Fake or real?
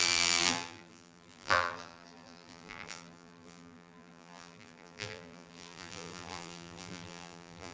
fake